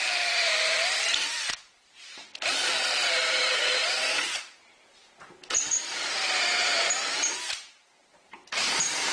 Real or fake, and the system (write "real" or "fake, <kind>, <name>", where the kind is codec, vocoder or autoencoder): fake, vocoder, BigVGAN v2